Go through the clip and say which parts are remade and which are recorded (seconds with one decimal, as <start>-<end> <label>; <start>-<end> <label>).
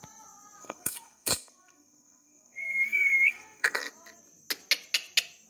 0.0-0.6 recorded; 0.6-3.9 remade; 3.9-5.5 recorded